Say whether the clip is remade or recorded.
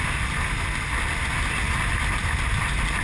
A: recorded